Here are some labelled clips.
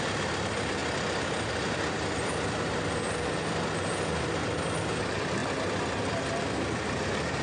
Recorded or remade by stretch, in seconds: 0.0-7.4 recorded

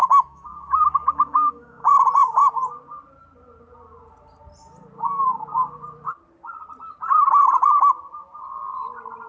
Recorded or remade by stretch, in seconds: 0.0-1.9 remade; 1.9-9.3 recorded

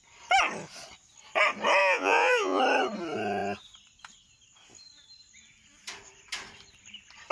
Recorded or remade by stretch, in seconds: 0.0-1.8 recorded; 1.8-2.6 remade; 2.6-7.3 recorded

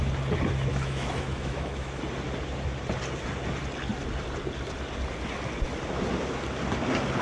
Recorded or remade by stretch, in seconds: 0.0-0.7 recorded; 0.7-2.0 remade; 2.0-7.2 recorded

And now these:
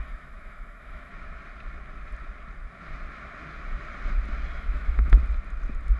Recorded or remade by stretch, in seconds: 0.0-1.1 remade; 1.1-4.6 recorded; 4.6-5.2 remade; 5.2-6.0 recorded